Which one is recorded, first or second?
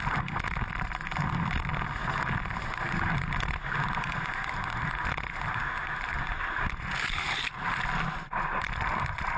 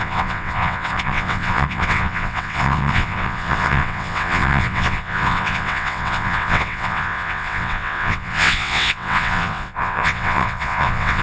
first